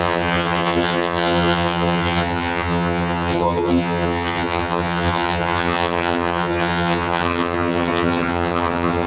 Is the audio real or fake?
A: fake